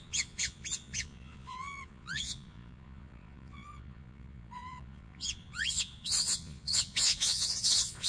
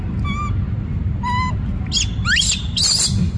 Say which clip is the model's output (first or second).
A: first